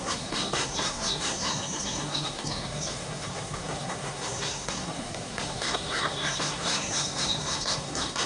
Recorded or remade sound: remade